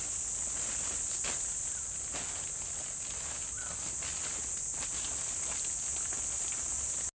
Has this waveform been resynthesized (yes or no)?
no